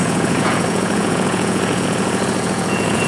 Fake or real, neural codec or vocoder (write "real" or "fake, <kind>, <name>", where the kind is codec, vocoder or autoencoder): fake, vocoder, Vocos